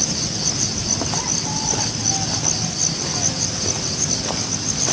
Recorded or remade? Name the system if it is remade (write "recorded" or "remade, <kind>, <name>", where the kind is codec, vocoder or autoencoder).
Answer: recorded